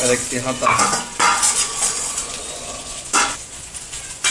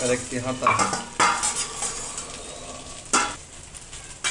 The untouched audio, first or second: second